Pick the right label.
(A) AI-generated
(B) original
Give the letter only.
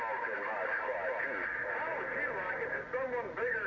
B